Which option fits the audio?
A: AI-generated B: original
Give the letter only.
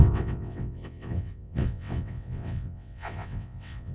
A